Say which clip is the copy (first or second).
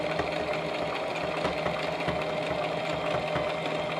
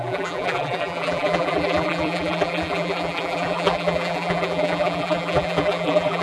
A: second